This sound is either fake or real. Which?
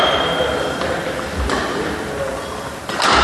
real